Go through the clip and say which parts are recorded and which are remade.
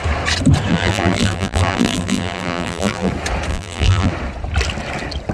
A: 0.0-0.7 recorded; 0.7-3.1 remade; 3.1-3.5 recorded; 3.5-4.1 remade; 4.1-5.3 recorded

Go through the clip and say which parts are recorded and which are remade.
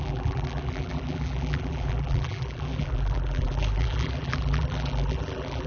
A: 0.0-5.7 remade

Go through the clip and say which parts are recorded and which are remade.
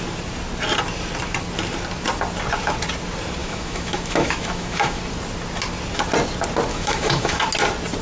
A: 0.0-3.4 recorded; 3.4-5.0 remade; 5.0-6.7 recorded; 6.7-7.4 remade; 7.4-8.0 recorded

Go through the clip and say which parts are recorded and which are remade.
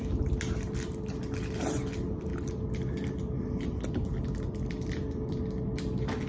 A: 0.0-6.3 recorded